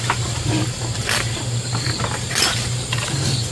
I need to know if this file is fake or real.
fake